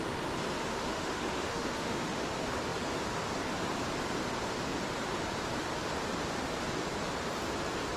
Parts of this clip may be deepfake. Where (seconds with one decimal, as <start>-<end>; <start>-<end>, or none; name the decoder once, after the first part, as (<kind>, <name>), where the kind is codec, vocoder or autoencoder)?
0.6-2.2 (autoencoder, DAC-VAE)